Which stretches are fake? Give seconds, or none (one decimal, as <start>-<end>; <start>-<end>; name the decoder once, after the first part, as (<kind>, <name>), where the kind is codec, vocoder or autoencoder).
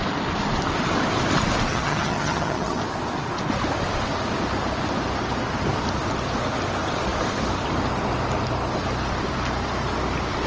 1.7-2.8 (vocoder, HiFi-GAN)